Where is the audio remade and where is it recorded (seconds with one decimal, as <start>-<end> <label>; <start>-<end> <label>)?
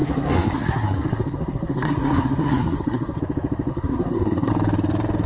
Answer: 0.0-3.2 remade; 3.2-3.7 recorded; 3.7-4.5 remade; 4.5-5.3 recorded